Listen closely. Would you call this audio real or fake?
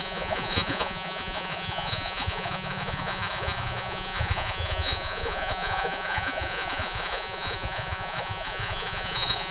fake